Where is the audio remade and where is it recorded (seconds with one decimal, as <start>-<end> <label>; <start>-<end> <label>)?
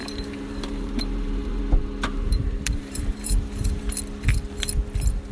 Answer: 0.0-1.6 remade; 1.6-2.1 recorded; 2.1-3.8 remade; 3.8-5.3 recorded